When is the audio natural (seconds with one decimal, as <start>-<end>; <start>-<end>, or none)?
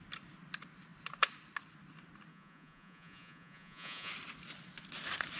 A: 0.0-2.3; 4.1-5.4